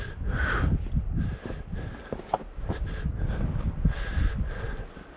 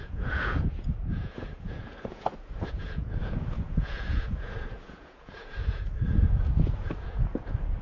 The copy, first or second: second